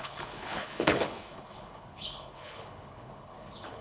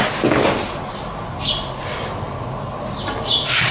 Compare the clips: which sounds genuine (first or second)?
second